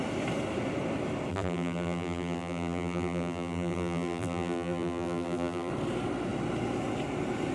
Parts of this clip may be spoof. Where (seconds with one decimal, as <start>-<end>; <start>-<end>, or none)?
1.3-5.7